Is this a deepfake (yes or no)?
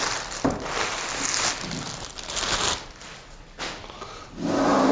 no